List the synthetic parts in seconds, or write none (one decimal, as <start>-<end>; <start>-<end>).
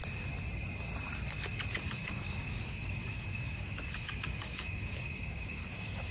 1.8-6.1